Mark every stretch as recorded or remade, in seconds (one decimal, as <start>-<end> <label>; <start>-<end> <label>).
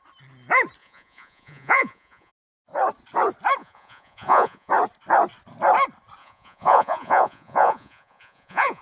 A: 0.0-0.8 recorded; 0.8-2.3 remade; 2.3-3.6 recorded; 3.6-4.7 remade; 4.7-6.2 recorded; 6.2-8.8 remade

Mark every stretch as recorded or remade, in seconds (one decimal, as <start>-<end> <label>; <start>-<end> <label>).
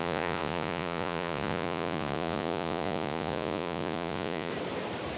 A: 0.0-4.5 remade; 4.5-5.2 recorded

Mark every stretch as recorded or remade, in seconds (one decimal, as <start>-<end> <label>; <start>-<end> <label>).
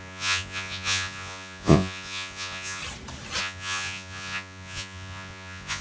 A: 0.0-2.8 remade; 2.8-3.4 recorded; 3.4-5.8 remade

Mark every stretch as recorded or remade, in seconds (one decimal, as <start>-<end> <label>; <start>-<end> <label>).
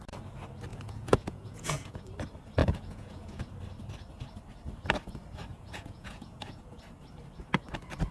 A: 0.0-0.7 recorded; 0.7-2.0 remade; 2.0-2.6 recorded; 2.6-3.5 remade; 3.5-5.5 recorded; 5.5-6.8 remade; 6.8-8.1 recorded